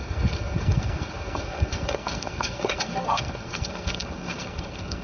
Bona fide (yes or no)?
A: no